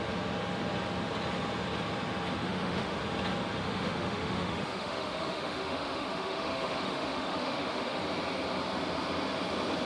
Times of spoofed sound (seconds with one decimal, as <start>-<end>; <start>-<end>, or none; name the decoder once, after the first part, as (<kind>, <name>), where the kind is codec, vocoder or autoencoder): 2.4-3.0 (autoencoder, DAC-VAE); 3.6-8.0